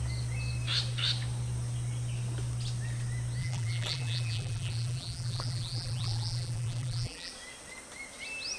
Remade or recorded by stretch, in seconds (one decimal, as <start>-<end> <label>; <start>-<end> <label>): 0.0-3.4 recorded; 3.4-7.3 remade; 7.3-8.6 recorded